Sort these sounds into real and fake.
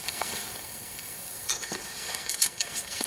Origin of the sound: fake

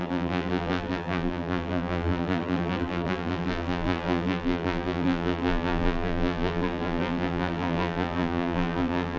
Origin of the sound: fake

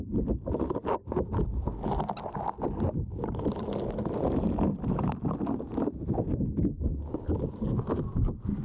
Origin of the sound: real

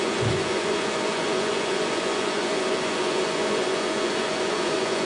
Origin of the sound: fake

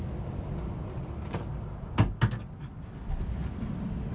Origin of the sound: real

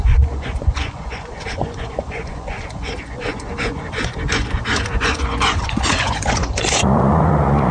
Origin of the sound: fake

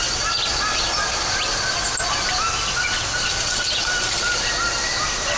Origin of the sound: real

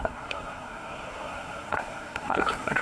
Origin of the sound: fake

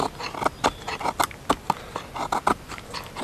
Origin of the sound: real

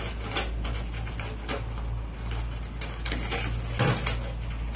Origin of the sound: real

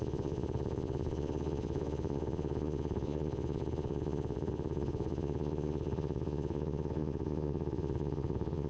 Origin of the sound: fake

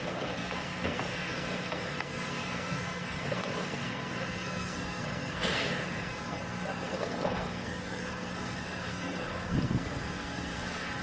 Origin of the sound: fake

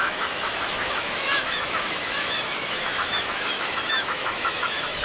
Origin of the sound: fake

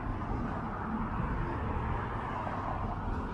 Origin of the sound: real